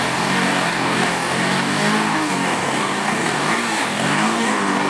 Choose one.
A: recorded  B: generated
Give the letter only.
B